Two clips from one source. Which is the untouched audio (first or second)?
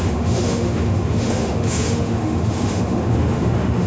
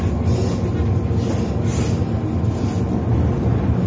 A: second